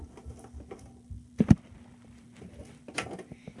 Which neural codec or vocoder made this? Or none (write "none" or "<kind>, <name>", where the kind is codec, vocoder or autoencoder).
vocoder, BigVGAN v2